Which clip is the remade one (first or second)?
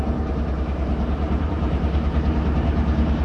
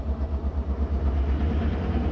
first